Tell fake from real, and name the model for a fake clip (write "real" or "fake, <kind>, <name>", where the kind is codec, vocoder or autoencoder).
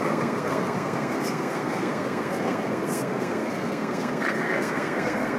fake, codec, SNAC